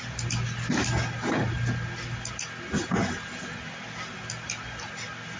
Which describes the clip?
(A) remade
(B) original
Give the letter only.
B